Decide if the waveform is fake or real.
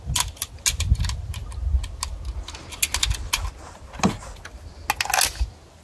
real